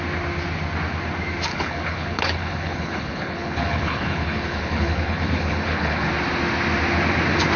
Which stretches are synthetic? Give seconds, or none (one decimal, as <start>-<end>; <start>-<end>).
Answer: 1.5-6.1